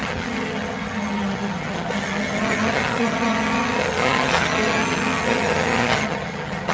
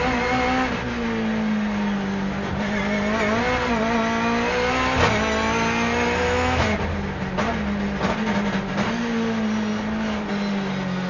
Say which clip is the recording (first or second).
second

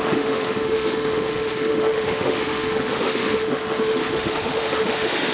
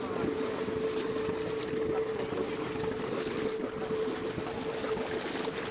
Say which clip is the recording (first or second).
second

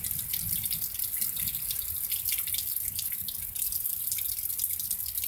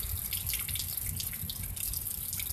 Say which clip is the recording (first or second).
second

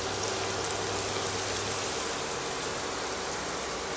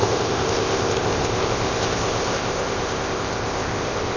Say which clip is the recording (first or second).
first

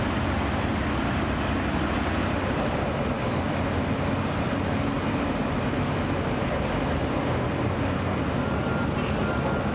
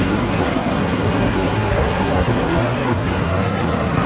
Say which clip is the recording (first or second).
first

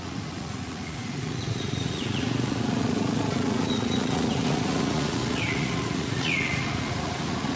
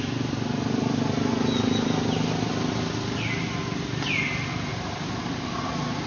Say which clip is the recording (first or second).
second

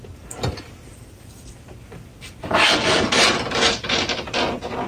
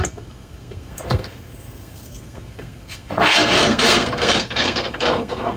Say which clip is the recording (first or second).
first